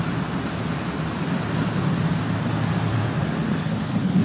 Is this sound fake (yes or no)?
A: no